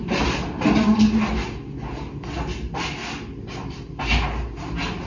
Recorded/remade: recorded